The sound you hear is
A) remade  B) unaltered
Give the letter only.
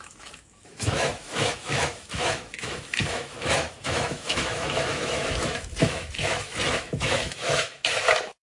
A